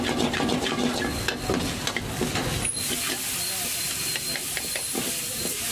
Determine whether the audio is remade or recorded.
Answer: recorded